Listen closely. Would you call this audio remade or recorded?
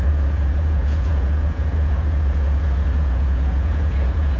remade